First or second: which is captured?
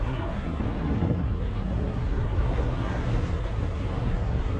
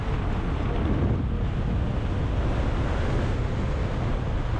second